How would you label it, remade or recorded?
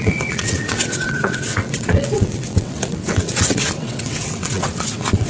remade